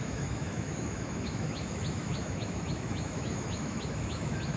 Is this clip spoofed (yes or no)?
yes